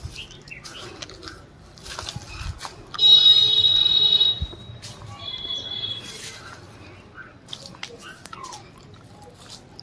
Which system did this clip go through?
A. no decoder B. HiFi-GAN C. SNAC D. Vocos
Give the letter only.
A